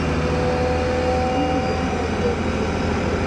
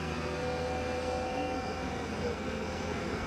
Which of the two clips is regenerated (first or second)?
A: second